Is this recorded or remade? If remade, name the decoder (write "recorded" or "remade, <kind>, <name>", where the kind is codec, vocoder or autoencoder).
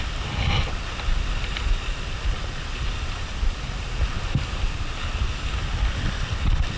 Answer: recorded